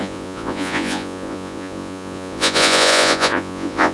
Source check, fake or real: fake